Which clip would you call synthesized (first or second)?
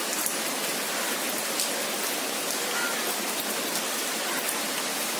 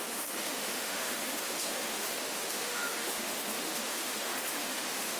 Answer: second